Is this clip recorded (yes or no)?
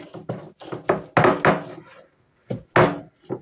yes